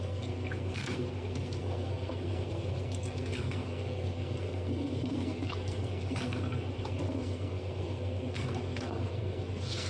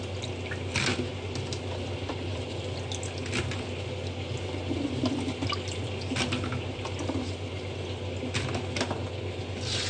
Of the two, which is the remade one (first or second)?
first